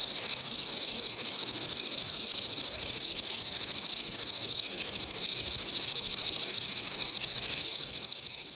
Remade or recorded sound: remade